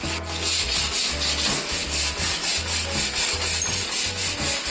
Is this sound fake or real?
real